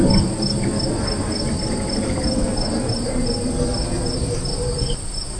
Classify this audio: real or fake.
real